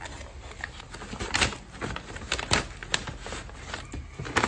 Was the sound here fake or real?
real